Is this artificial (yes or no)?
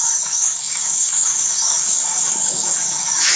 yes